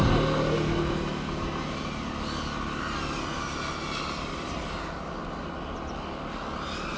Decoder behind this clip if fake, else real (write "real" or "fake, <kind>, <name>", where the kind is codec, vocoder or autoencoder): real